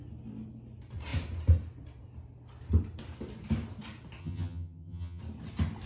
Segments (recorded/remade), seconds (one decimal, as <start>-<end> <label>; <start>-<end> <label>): 0.0-4.2 recorded; 4.2-5.2 remade; 5.2-5.9 recorded